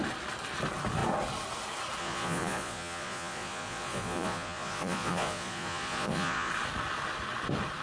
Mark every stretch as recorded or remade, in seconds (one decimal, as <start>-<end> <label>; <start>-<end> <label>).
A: 0.0-2.0 recorded; 2.0-6.5 remade; 6.5-7.8 recorded